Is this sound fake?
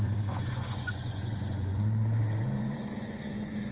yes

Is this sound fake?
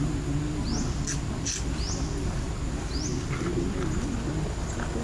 no